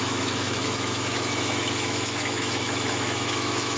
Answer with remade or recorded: remade